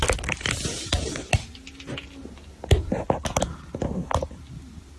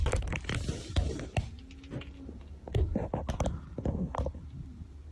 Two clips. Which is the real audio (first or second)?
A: first